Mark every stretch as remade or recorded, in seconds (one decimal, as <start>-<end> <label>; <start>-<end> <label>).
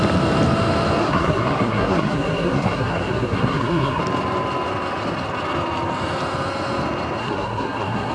0.0-1.0 recorded; 1.0-4.0 remade; 4.0-7.2 recorded; 7.2-8.1 remade